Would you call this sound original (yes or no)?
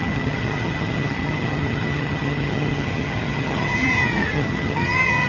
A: no